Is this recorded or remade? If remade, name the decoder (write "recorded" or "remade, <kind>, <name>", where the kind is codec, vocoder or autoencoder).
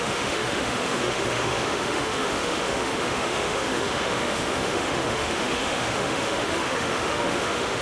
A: remade, autoencoder, DAC-VAE